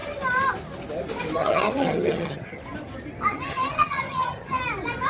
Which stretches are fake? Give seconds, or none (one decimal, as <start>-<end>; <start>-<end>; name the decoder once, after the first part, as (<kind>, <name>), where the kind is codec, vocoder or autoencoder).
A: 1.4-2.6 (vocoder, HiFi-GAN); 3.3-4.6

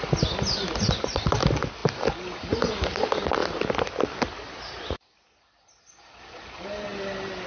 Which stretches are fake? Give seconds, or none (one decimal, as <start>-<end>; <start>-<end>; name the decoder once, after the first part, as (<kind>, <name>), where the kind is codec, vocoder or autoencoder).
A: none

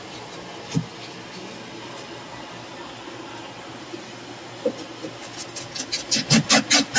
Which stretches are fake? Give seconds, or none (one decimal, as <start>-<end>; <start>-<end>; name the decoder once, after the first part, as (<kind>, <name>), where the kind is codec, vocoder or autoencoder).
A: none

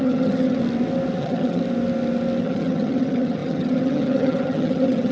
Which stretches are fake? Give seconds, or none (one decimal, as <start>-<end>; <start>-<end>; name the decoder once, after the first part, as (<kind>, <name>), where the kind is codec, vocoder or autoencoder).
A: 0.0-0.6 (vocoder, HiFi-GAN); 1.2-1.6; 2.4-5.1

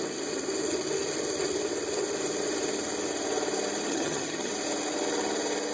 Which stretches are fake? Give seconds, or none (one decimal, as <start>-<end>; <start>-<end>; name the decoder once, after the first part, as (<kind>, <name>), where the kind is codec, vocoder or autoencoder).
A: 3.9-4.5 (vocoder, HiFi-GAN)